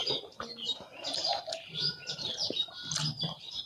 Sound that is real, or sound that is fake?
fake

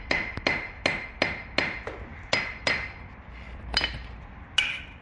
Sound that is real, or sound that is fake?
real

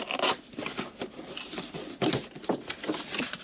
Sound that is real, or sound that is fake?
real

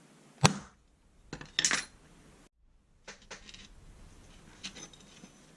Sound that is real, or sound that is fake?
real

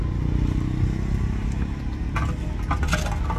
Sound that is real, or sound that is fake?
real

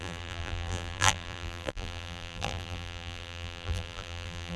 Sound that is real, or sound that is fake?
fake